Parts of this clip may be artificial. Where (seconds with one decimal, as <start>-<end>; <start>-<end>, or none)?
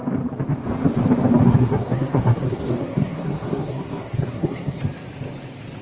1.5-4.8